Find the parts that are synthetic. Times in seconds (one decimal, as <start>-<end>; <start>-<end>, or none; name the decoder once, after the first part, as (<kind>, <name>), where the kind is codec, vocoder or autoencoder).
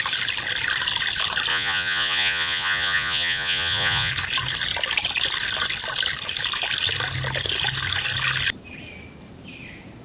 1.5-4.1 (vocoder, Vocos)